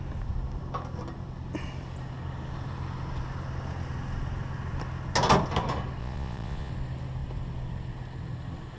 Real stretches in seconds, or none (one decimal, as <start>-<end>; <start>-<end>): 0.0-6.0; 6.7-8.8